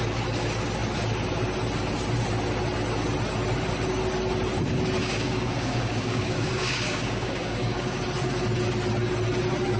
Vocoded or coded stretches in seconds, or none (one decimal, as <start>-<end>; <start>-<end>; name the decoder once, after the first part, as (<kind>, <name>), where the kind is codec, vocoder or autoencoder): 5.0-8.0 (codec, DAC)